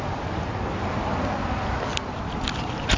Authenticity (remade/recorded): recorded